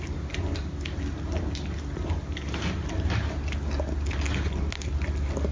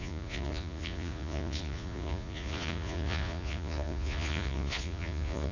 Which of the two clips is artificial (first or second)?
second